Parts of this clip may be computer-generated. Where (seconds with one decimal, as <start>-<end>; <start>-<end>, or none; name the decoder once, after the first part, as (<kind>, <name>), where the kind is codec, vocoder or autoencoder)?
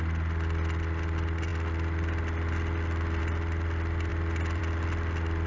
none